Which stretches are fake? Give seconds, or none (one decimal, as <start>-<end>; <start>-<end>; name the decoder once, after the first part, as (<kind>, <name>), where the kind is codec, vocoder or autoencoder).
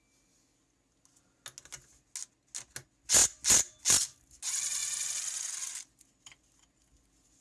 none